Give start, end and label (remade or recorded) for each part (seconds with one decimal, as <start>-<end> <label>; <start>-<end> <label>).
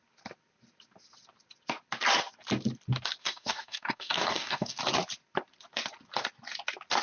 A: 0.0-3.2 recorded; 3.2-4.8 remade; 4.8-7.0 recorded